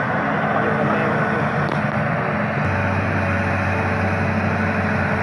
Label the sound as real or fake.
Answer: real